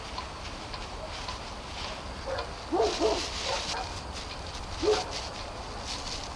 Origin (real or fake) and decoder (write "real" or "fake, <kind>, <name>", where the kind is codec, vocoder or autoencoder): real